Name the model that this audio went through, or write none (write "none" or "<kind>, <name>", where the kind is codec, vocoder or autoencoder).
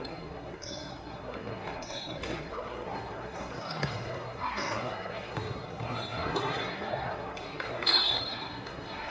codec, SNAC